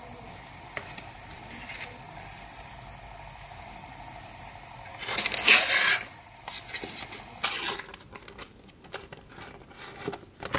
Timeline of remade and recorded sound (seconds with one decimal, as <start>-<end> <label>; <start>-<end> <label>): 0.0-7.9 recorded; 7.9-9.6 remade; 9.6-10.6 recorded